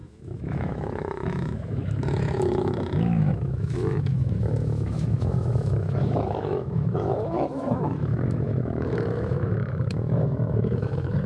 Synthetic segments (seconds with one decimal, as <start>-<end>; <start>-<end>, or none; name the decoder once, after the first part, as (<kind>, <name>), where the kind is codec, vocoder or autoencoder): 0.0-11.3 (autoencoder, DAC-VAE)